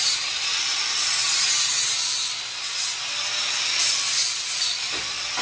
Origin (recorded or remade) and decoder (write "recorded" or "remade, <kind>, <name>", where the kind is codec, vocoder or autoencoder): recorded